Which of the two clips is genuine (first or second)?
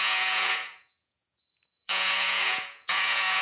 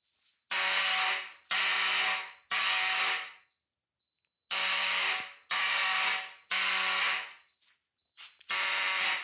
second